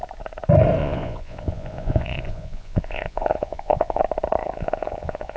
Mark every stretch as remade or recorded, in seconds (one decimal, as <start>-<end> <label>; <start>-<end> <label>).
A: 0.0-0.8 recorded; 0.8-4.0 remade; 4.0-4.4 recorded; 4.4-5.4 remade